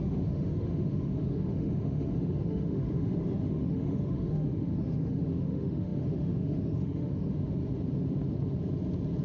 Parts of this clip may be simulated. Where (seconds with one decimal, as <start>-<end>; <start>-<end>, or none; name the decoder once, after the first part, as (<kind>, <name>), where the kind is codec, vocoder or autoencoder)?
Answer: 0.0-7.3 (autoencoder, DAC-VAE)